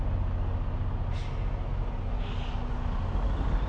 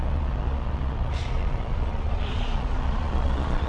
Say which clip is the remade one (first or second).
second